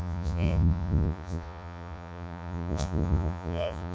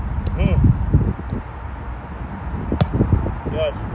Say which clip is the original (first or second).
second